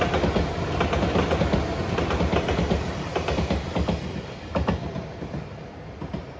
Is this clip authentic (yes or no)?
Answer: yes